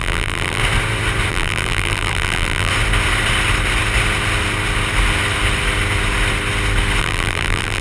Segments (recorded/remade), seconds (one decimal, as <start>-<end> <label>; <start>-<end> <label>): 0.0-0.6 remade; 0.6-1.3 recorded; 1.3-2.7 remade; 2.7-7.0 recorded; 7.0-7.8 remade